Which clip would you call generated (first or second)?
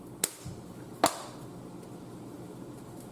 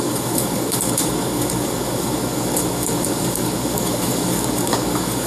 second